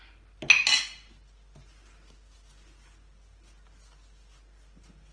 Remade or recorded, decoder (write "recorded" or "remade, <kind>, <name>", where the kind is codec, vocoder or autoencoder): recorded